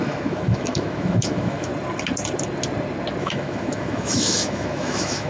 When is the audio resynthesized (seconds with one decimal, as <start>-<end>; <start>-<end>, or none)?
0.0-1.7; 3.2-5.3